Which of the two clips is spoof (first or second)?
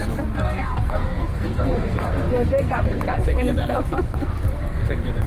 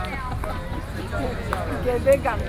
first